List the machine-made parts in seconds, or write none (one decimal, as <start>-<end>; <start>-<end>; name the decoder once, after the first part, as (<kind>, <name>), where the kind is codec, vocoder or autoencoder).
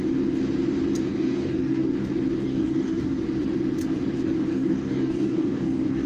1.1-1.9 (codec, DAC); 2.4-3.2; 4.5-6.1